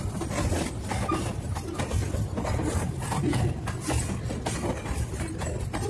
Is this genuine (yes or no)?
yes